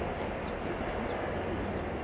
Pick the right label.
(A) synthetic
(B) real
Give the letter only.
B